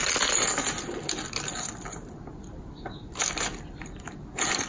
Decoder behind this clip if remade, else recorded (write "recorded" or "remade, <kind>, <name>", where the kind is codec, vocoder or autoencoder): recorded